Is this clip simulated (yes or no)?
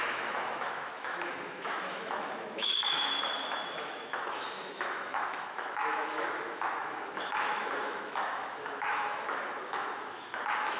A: yes